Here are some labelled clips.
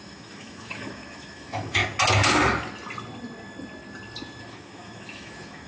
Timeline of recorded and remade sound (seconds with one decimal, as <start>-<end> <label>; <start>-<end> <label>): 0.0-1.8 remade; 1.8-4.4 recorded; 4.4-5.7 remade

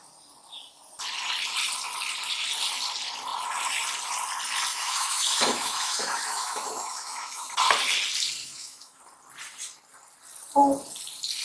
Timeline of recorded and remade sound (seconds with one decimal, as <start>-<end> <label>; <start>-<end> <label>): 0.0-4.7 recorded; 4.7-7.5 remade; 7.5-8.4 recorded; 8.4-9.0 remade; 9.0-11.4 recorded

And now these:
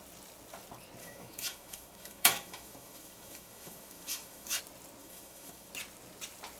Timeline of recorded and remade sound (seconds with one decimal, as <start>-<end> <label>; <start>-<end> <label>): 0.0-1.0 recorded; 1.0-4.6 remade; 4.6-5.0 recorded; 5.0-5.7 remade; 5.7-6.6 recorded